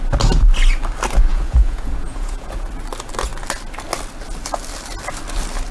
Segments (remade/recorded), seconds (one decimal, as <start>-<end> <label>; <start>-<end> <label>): 0.0-1.3 recorded; 1.3-2.7 remade; 2.7-5.7 recorded

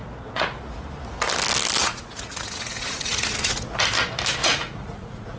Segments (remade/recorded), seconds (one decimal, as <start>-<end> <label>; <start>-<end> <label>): 0.0-0.6 remade; 0.6-1.8 recorded; 1.8-3.8 remade; 3.8-4.4 recorded; 4.4-5.4 remade

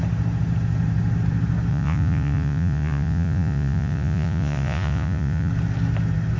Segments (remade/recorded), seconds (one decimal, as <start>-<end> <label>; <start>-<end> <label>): 0.0-1.7 recorded; 1.7-5.5 remade; 5.5-6.4 recorded

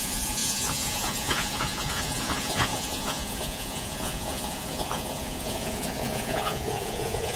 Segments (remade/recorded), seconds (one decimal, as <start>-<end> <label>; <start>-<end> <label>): 0.0-7.4 remade

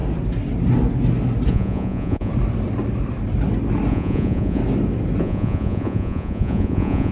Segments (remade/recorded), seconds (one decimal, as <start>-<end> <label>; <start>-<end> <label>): 0.0-1.5 recorded; 1.5-2.3 remade; 2.3-3.9 recorded; 3.9-4.6 remade; 4.6-5.2 recorded; 5.2-7.1 remade

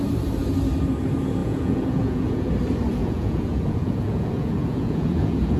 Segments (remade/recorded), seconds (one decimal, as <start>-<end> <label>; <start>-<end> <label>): 0.0-1.4 recorded; 1.4-2.5 remade; 2.5-2.9 recorded; 2.9-5.6 remade

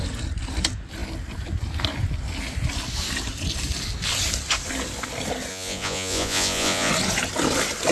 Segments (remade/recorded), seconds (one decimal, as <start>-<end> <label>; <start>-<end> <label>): 0.0-5.5 recorded; 5.5-6.9 remade; 6.9-7.9 recorded

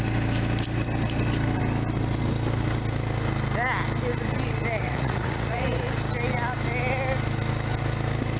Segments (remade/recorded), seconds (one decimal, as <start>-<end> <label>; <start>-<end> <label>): 0.0-4.8 recorded; 4.8-5.8 remade; 5.8-8.4 recorded